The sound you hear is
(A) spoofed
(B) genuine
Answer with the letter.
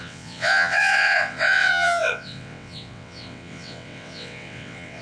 A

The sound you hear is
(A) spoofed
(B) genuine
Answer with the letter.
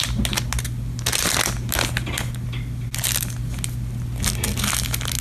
B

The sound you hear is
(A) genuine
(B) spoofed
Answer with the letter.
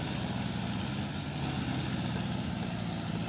A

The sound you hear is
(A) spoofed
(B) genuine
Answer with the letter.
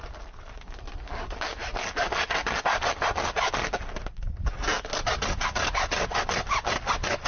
B